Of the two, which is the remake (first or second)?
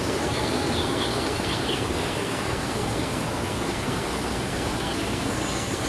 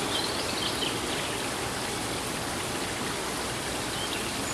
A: first